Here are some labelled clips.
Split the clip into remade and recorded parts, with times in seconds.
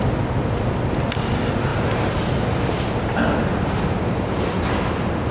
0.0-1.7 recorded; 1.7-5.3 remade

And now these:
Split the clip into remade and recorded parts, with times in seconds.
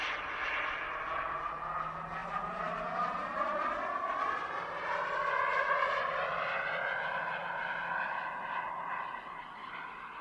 0.0-2.2 recorded; 2.2-2.9 remade; 2.9-9.6 recorded; 9.6-10.2 remade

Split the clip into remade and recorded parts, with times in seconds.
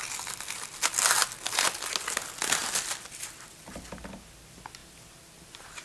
0.0-2.6 recorded; 2.6-3.7 remade; 3.7-4.8 recorded; 4.8-5.8 remade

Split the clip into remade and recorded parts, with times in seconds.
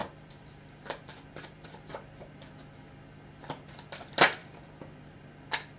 0.0-1.9 remade; 1.9-4.4 recorded; 4.4-5.2 remade; 5.2-5.8 recorded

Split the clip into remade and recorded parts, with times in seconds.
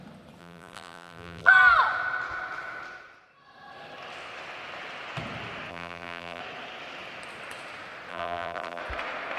0.0-0.4 recorded; 0.4-1.5 remade; 1.5-5.7 recorded; 5.7-6.4 remade; 6.4-8.1 recorded; 8.1-8.8 remade; 8.8-9.4 recorded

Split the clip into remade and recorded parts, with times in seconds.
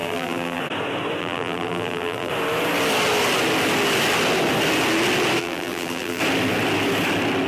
0.0-0.6 remade; 0.6-1.2 recorded; 1.2-2.3 remade; 2.3-5.4 recorded; 5.4-6.2 remade; 6.2-7.5 recorded